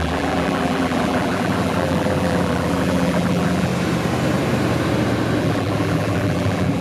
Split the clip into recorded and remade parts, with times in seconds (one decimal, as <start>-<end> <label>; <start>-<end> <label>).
0.0-3.7 remade; 3.7-5.4 recorded; 5.4-6.8 remade